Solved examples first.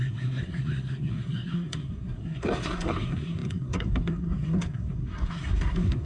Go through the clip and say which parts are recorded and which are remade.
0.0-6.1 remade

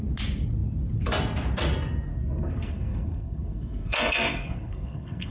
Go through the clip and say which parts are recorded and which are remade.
0.0-2.1 recorded; 2.1-5.3 remade

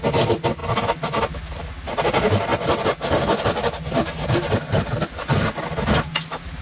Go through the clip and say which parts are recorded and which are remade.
0.0-6.6 recorded

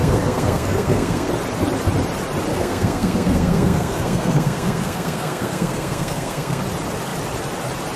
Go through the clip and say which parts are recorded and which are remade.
0.0-1.3 remade; 1.3-2.5 recorded; 2.5-6.6 remade; 6.6-8.0 recorded

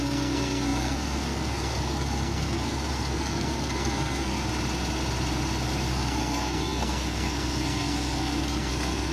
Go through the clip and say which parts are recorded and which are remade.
0.0-4.4 remade; 4.4-5.9 recorded; 5.9-9.1 remade

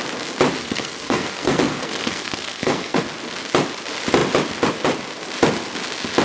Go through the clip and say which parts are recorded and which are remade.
0.0-0.6 recorded; 0.6-3.0 remade; 3.0-6.2 recorded

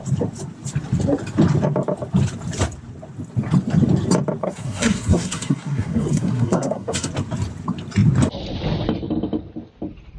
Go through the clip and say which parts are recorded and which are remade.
0.0-4.4 recorded; 4.4-7.1 remade; 7.1-10.2 recorded

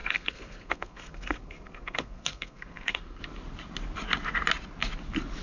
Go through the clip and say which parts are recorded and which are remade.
0.0-3.2 remade; 3.2-5.4 recorded